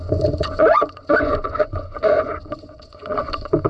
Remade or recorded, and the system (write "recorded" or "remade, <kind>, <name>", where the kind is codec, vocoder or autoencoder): remade, vocoder, Vocos